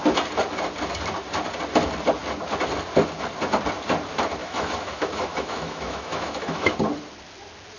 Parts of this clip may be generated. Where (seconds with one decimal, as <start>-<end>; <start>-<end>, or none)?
4.4-6.7